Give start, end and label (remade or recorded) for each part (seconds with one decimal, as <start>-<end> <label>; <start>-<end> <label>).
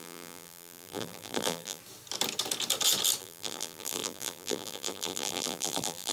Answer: 0.0-1.8 remade; 1.8-3.2 recorded; 3.2-6.1 remade